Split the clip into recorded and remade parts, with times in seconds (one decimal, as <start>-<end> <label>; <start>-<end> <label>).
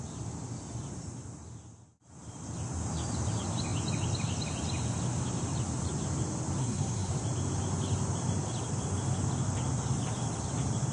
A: 0.0-6.6 recorded; 6.6-7.1 remade; 7.1-10.9 recorded